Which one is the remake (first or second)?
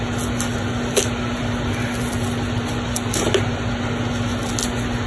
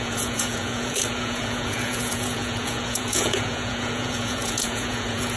second